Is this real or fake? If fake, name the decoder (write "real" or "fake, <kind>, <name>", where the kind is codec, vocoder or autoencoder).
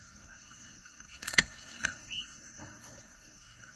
fake, codec, SNAC